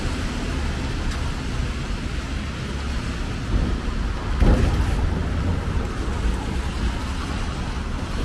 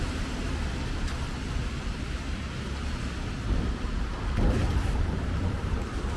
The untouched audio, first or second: first